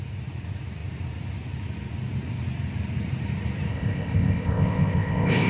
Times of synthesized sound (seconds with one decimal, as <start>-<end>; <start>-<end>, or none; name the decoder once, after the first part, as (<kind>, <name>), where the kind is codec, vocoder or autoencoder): 3.7-5.5 (codec, ZipCodec)